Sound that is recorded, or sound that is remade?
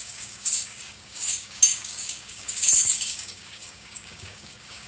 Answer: remade